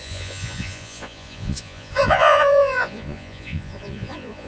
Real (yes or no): no